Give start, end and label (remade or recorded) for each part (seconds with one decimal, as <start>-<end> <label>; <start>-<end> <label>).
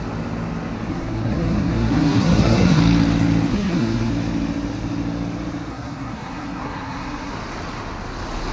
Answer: 0.0-0.9 recorded; 0.9-2.8 remade; 2.8-3.5 recorded; 3.5-4.1 remade; 4.1-5.7 recorded; 5.7-7.3 remade; 7.3-8.5 recorded